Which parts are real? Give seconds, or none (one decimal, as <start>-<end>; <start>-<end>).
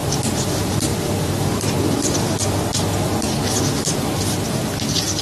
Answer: 0.0-5.2